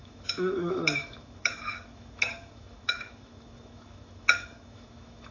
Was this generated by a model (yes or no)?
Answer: yes